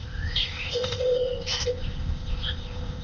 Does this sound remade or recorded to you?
remade